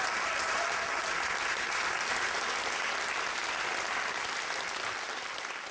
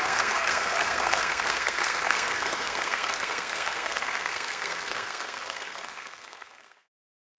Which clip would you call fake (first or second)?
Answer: second